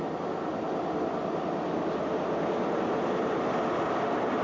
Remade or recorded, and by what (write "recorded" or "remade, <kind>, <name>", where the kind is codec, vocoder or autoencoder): recorded